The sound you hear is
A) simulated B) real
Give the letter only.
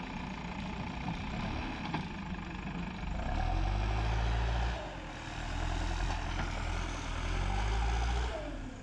B